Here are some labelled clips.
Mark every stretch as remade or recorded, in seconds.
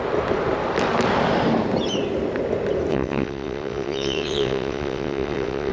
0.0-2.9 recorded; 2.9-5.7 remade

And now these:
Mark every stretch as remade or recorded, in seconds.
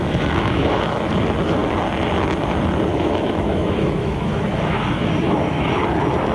0.0-1.1 remade; 1.1-2.9 recorded; 2.9-5.8 remade; 5.8-6.3 recorded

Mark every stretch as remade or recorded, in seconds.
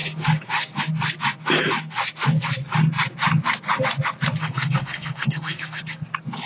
0.0-4.4 recorded; 4.4-5.8 remade; 5.8-6.5 recorded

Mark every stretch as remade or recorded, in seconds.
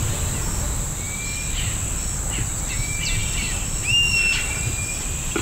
0.0-5.4 recorded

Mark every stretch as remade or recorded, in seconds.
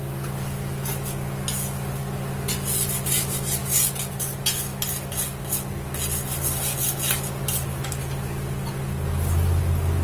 0.0-10.0 recorded